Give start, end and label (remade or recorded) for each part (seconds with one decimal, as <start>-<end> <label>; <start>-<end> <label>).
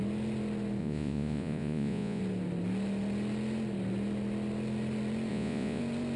0.0-0.8 recorded; 0.8-2.2 remade; 2.2-5.3 recorded; 5.3-5.8 remade; 5.8-6.2 recorded